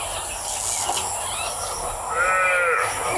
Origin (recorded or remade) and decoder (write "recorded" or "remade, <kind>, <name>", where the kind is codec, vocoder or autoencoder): recorded